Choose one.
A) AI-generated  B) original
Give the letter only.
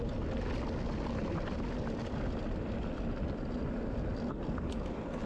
B